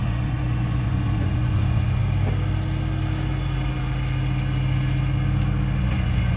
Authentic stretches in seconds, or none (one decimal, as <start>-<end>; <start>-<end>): 2.0-5.8